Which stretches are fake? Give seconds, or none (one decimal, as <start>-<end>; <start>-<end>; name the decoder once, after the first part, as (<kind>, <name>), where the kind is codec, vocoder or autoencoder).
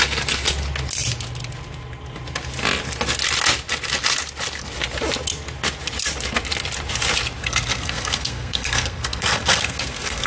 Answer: 7.4-10.3 (codec, SNAC)